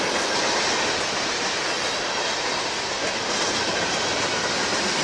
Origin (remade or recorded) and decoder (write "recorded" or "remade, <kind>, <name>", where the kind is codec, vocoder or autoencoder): recorded